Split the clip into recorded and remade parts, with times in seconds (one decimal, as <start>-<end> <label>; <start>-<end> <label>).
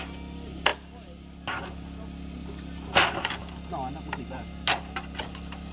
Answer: 0.0-5.7 recorded